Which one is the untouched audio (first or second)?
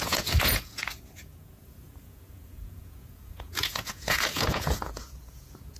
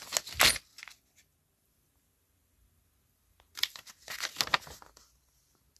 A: second